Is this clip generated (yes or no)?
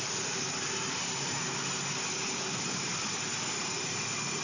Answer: no